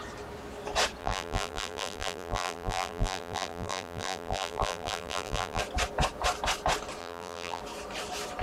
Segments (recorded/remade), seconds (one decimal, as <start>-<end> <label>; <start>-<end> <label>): 0.0-1.0 recorded; 1.0-5.6 remade; 5.6-7.0 recorded; 7.0-7.6 remade; 7.6-8.4 recorded